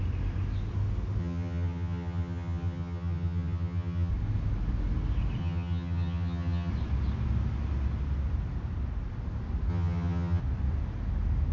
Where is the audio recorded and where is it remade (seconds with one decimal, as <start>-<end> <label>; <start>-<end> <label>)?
0.0-1.2 recorded; 1.2-4.1 remade; 4.1-5.4 recorded; 5.4-6.7 remade; 6.7-9.7 recorded; 9.7-10.4 remade; 10.4-11.5 recorded